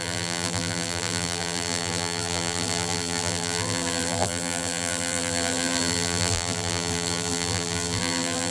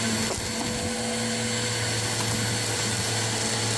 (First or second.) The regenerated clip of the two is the first